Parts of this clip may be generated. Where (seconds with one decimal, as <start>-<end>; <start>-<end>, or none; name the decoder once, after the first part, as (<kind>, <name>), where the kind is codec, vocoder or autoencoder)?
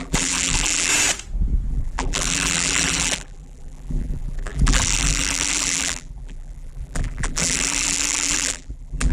0.0-0.9 (vocoder, BigVGAN v2); 1.7-9.1